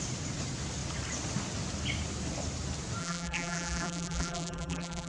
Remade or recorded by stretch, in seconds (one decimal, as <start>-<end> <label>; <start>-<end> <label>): 0.0-3.0 recorded; 3.0-5.1 remade